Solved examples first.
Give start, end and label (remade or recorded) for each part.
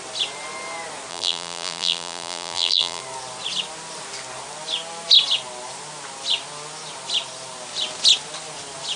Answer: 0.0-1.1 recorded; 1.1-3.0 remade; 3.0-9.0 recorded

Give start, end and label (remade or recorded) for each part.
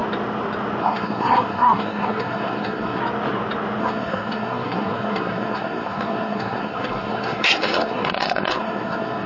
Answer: 0.0-0.8 recorded; 0.8-3.0 remade; 3.0-3.8 recorded; 3.8-9.3 remade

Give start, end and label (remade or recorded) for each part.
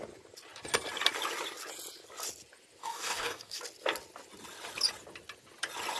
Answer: 0.0-2.8 recorded; 2.8-3.6 remade; 3.6-6.0 recorded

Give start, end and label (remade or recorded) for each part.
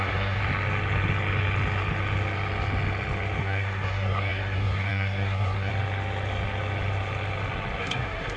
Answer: 0.0-0.4 remade; 0.4-3.4 recorded; 3.4-5.7 remade; 5.7-7.8 recorded; 7.8-8.4 remade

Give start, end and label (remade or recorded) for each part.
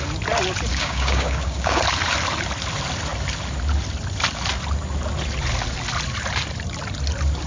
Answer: 0.0-0.7 recorded; 0.7-1.8 remade; 1.8-7.5 recorded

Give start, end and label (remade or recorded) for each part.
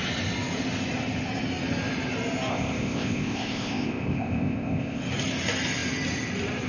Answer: 0.0-2.5 recorded; 2.5-5.0 remade; 5.0-6.7 recorded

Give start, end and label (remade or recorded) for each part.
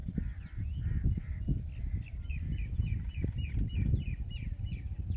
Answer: 0.0-5.2 recorded